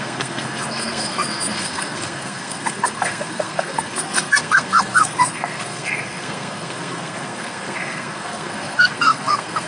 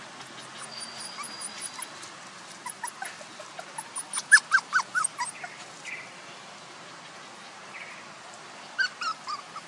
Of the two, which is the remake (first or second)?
first